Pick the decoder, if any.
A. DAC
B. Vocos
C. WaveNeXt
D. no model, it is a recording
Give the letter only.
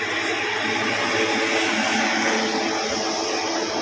D